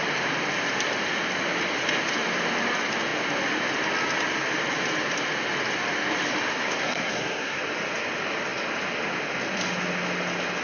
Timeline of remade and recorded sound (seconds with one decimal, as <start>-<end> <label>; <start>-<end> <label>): 0.0-6.5 recorded; 6.5-7.6 remade; 7.6-10.6 recorded